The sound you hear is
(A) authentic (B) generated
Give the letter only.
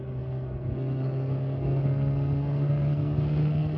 B